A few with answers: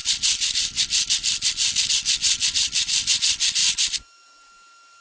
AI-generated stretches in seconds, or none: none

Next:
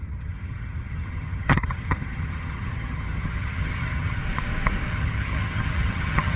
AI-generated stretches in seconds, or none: 0.0-4.2; 4.9-6.4